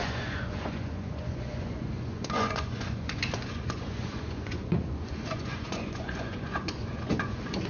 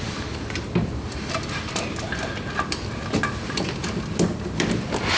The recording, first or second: second